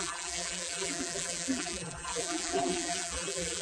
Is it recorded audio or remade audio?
remade